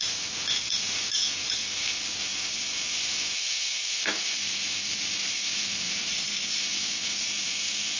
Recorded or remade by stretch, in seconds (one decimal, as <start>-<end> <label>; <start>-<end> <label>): 0.0-6.1 recorded; 6.1-6.6 remade; 6.6-8.0 recorded

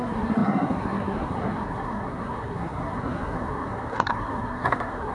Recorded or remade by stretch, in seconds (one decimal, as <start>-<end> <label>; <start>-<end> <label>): 0.0-5.1 remade

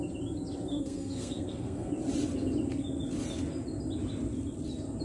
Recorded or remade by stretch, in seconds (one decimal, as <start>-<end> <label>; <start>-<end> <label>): 0.0-0.7 recorded; 0.7-1.9 remade; 1.9-5.0 recorded

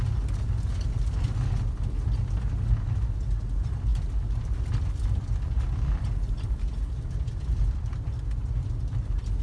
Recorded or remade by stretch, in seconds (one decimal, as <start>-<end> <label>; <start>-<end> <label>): 0.0-3.9 recorded; 3.9-7.9 remade; 7.9-9.4 recorded

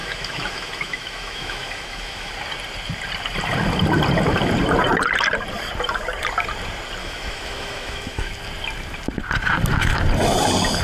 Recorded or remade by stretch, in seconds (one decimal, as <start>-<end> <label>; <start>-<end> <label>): 0.0-2.3 remade; 2.3-7.0 recorded; 7.0-8.3 remade; 8.3-10.8 recorded

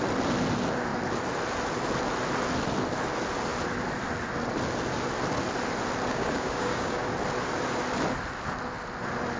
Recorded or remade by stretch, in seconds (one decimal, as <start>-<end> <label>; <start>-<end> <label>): 0.0-6.1 recorded; 6.1-7.1 remade; 7.1-9.4 recorded